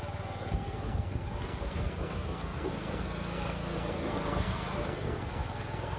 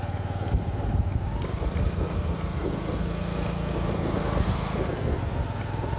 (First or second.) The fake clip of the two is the first